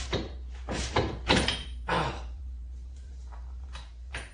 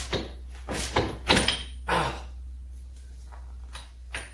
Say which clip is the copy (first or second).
first